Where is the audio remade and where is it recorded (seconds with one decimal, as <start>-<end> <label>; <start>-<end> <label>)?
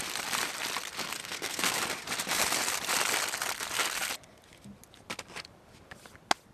0.0-1.2 recorded; 1.2-1.8 remade; 1.8-6.5 recorded